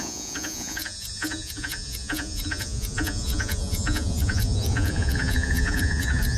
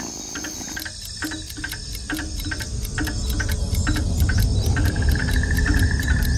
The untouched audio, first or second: second